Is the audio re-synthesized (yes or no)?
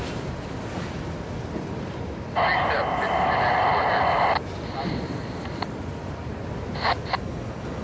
no